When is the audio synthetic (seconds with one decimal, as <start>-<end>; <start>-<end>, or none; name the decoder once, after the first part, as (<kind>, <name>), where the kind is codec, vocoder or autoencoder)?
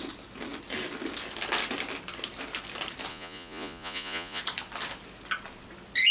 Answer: 3.1-4.4 (vocoder, Vocos)